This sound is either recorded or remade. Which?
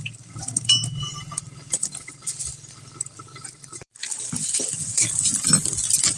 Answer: remade